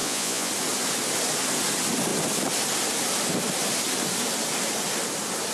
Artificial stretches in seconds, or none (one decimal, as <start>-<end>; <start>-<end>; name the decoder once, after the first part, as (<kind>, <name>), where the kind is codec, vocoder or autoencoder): 0.0-0.5 (vocoder, Vocos)